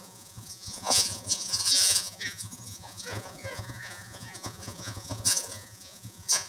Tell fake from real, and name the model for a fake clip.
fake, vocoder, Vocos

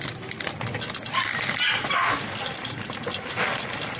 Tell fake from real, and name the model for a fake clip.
real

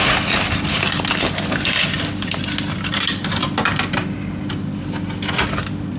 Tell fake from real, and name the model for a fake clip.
real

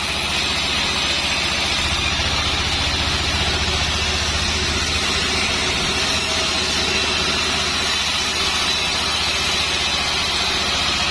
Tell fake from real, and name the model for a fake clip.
real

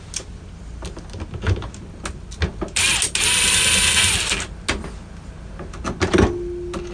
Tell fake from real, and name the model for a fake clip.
real